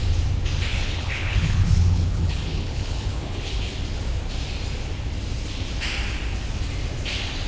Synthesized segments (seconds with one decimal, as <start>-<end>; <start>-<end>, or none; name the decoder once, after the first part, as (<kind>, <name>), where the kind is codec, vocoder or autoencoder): 0.7-3.7 (codec, HILCodec)